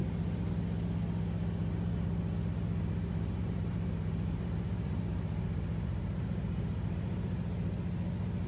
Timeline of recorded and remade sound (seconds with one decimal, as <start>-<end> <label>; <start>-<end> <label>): 0.0-3.1 recorded; 3.1-7.1 remade; 7.1-8.5 recorded